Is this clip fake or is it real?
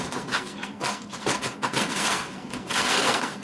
fake